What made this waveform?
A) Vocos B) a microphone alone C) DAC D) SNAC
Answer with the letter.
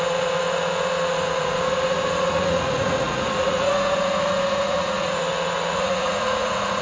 A